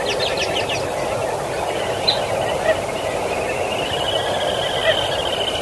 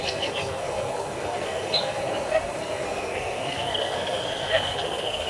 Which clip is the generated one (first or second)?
second